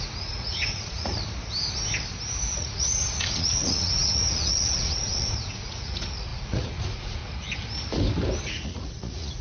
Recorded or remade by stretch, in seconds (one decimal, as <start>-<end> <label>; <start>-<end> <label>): 0.0-1.1 remade; 1.1-2.5 recorded; 2.5-7.2 remade; 7.2-8.4 recorded; 8.4-9.4 remade